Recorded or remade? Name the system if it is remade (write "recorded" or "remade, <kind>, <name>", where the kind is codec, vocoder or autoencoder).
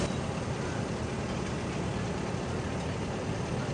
recorded